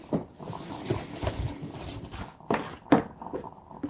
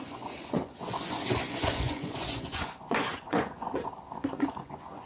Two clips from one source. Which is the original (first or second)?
first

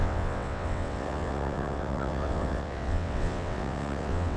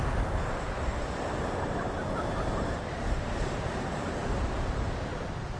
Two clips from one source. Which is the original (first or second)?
second